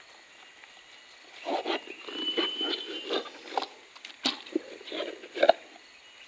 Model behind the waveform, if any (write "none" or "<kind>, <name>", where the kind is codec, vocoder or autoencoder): none